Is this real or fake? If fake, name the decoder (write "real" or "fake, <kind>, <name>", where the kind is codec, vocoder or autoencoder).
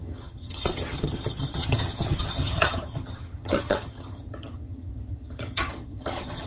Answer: fake, vocoder, HiFi-GAN